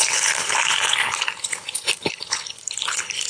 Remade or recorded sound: remade